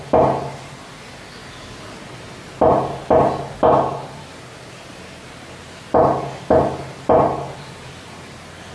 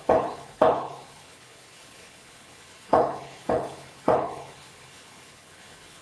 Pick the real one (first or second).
first